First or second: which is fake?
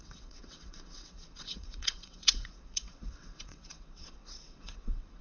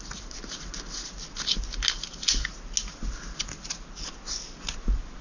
first